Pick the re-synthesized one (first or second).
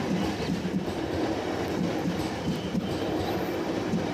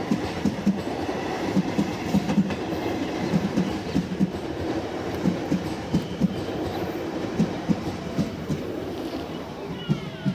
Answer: second